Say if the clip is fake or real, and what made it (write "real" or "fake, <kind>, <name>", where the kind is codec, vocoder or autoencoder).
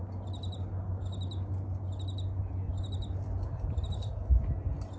real